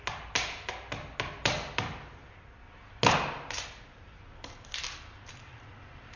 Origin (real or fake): real